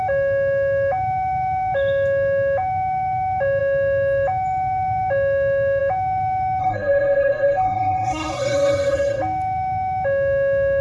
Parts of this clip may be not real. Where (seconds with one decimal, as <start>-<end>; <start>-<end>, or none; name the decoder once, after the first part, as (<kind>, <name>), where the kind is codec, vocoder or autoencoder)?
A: 6.6-9.2 (codec, SNAC)

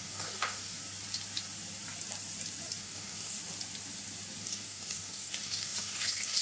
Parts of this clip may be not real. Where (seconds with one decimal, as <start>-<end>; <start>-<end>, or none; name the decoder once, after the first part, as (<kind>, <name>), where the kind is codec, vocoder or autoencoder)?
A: 0.0-0.8 (codec, DAC); 2.8-3.4; 4.4-6.4